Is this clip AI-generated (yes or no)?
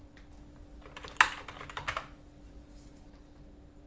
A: no